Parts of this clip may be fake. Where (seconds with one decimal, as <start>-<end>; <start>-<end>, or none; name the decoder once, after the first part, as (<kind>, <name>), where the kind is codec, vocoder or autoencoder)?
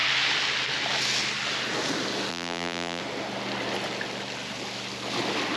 2.3-3.0 (vocoder, BigVGAN v2)